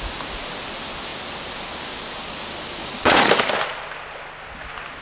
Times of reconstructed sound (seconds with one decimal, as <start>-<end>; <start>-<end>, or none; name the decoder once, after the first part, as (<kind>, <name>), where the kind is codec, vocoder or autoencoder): 2.8-3.3 (vocoder, Vocos)